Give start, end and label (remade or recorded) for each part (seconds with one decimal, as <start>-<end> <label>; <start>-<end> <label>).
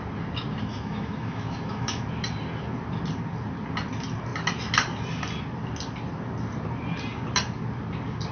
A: 0.0-0.7 recorded; 0.7-2.0 remade; 2.0-8.3 recorded